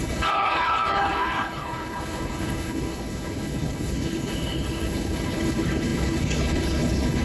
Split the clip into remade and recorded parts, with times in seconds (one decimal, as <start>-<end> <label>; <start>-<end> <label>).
0.0-7.2 remade